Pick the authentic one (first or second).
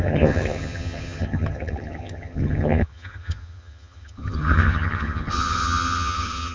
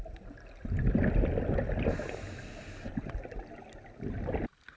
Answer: second